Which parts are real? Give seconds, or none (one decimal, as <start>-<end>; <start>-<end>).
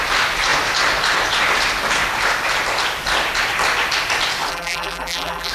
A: 0.0-4.5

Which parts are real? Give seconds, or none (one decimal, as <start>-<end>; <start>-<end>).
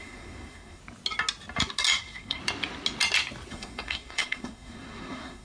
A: 0.8-2.0; 2.4-3.5